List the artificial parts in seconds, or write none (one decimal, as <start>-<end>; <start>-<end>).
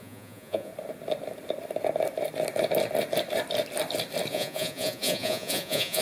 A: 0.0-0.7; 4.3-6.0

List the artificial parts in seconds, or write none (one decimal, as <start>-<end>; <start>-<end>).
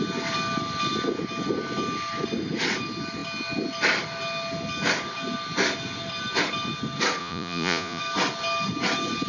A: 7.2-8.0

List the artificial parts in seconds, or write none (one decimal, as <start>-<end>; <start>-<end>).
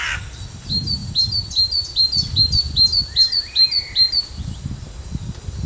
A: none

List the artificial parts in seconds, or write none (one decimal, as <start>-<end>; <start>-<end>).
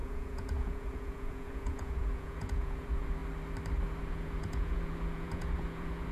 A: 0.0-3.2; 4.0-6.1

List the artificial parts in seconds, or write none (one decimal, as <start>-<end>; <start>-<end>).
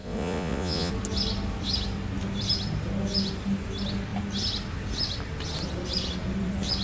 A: 0.0-0.9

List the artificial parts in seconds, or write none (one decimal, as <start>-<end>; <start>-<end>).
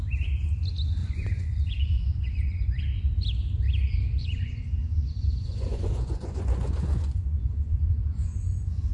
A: 1.0-2.8; 4.2-8.9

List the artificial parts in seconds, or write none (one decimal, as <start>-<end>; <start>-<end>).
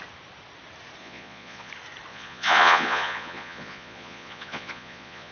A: 1.0-1.7; 2.1-5.3